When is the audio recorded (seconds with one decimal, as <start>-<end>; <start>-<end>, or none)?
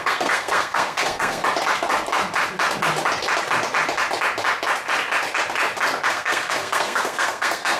1.4-6.1